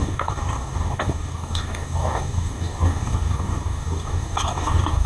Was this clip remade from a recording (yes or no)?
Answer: yes